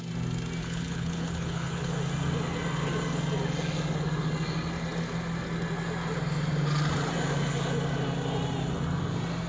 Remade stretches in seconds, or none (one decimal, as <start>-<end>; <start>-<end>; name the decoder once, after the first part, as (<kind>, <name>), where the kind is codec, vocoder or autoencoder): 0.6-1.9 (codec, HILCodec)